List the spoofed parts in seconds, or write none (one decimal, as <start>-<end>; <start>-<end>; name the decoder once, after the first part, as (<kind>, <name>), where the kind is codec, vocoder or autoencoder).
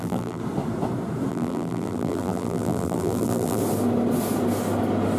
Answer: 0.0-0.4 (vocoder, BigVGAN v2); 1.3-3.6